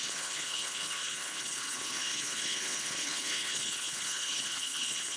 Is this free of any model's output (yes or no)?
no